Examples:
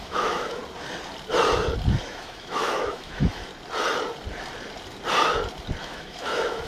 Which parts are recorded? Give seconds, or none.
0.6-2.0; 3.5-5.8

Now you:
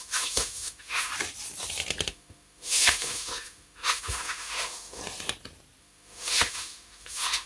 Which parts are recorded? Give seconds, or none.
1.1-2.1; 5.0-5.8

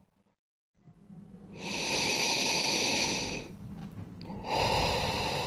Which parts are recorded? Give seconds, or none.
0.0-2.1; 3.1-5.5

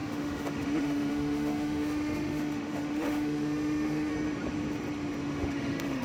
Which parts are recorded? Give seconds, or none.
4.1-5.2

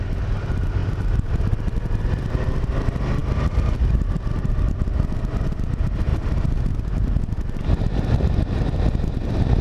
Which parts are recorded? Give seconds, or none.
0.0-9.6

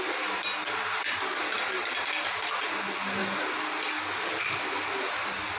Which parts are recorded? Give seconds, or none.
0.0-5.6

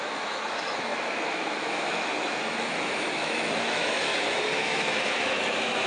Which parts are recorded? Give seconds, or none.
4.1-4.6

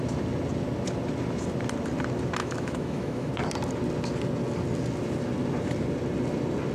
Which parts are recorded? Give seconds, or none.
0.0-2.4; 3.3-6.7